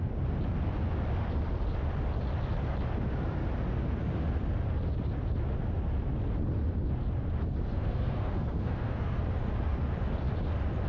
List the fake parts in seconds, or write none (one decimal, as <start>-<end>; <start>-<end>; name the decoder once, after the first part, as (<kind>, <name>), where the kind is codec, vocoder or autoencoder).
7.7-9.2 (codec, SNAC)